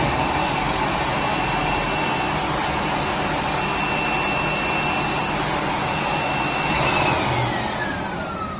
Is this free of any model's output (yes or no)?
yes